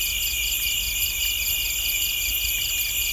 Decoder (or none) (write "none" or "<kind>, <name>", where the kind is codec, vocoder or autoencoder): none